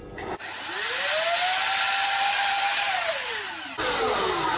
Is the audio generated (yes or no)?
no